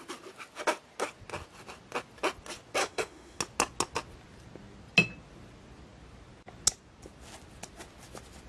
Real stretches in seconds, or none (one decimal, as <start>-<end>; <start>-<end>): 0.0-2.8; 3.4-8.5

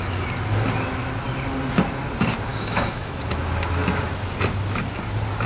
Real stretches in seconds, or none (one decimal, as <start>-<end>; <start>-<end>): 0.0-2.5; 3.2-5.5

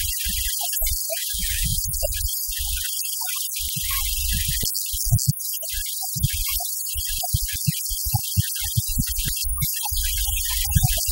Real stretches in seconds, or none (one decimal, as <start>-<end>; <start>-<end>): 0.0-1.2; 1.8-11.1